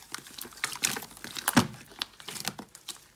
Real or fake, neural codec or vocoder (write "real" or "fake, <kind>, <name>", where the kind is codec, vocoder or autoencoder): real